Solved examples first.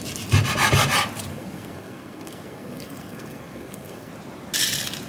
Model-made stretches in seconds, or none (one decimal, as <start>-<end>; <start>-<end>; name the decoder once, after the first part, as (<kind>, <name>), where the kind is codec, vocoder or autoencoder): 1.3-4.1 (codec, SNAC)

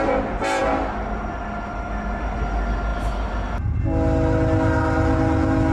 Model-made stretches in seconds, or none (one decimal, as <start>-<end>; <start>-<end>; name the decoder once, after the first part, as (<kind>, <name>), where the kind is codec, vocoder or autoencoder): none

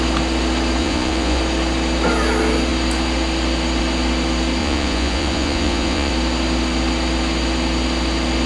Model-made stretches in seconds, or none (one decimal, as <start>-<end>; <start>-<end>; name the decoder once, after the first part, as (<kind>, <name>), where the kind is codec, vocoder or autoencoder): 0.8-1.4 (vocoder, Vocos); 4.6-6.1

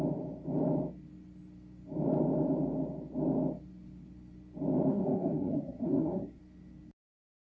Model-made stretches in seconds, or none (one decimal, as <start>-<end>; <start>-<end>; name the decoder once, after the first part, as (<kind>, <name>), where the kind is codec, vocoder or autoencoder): 4.9-6.4 (codec, SNAC)

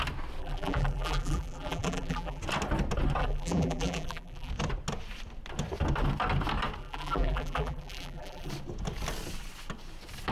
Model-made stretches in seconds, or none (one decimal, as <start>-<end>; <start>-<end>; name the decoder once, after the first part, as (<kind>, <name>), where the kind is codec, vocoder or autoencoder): 0.4-2.4 (vocoder, BigVGAN v2); 3.2-4.5; 6.8-8.5

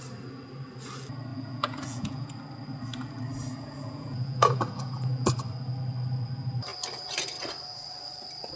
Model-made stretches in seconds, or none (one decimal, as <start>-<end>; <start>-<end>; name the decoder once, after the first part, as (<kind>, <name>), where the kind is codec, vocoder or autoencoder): 1.3-2.3 (vocoder, Vocos); 3.5-5.3